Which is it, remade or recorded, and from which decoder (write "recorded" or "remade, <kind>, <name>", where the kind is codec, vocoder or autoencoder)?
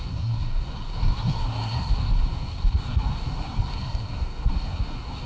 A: remade, codec, SNAC